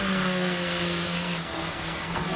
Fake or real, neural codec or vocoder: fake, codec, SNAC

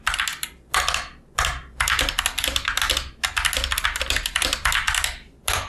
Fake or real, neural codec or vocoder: real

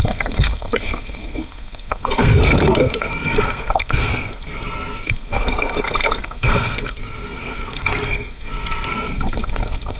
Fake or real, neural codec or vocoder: fake, codec, SNAC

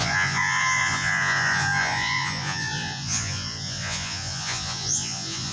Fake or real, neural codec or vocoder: fake, vocoder, Vocos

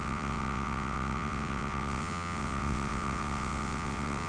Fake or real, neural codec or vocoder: fake, vocoder, WaveNeXt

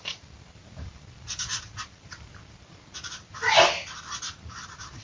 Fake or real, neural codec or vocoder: fake, vocoder, BigVGAN v2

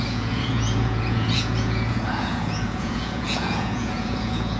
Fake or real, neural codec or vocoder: fake, vocoder, Vocos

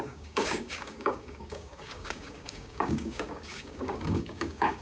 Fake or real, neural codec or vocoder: fake, codec, DAC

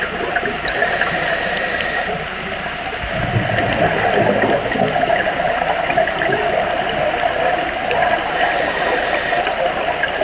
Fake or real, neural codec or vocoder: real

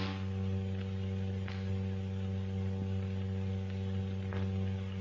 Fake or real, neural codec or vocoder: real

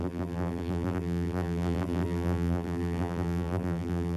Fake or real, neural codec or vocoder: fake, vocoder, BigVGAN v2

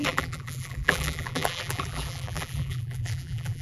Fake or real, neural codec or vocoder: fake, vocoder, BigVGAN v2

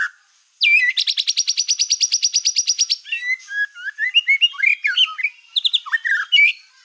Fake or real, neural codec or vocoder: real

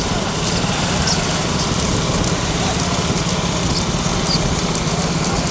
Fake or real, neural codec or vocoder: real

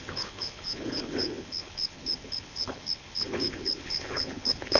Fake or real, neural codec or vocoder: fake, codec, HILCodec